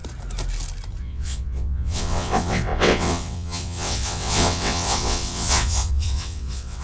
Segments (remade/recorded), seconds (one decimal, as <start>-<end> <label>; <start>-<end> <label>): 0.0-1.0 recorded; 1.0-6.8 remade